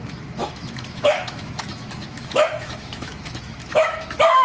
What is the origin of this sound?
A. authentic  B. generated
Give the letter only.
B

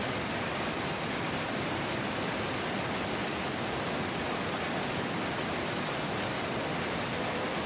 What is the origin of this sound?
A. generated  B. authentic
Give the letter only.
B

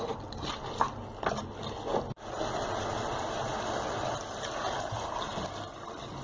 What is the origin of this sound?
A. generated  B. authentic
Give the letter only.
B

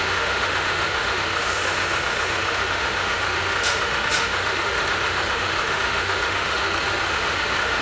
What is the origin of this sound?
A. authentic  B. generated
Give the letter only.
B